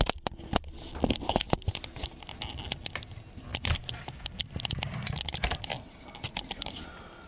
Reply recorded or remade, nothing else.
recorded